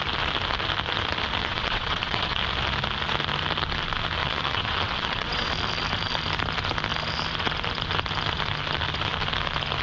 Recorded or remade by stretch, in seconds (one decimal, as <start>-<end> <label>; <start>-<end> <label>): 0.0-1.4 recorded; 1.4-2.4 remade; 2.4-4.2 recorded; 4.2-5.5 remade; 5.5-9.8 recorded